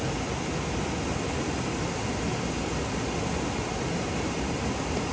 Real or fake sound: real